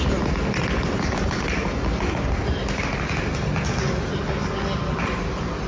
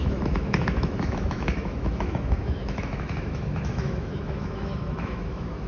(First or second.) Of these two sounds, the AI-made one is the second